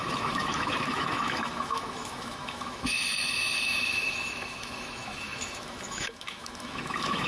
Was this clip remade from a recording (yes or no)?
yes